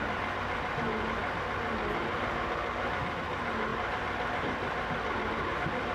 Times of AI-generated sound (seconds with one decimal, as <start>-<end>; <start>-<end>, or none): 3.7-5.3